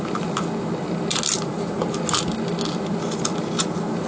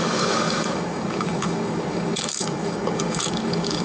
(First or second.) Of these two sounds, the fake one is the second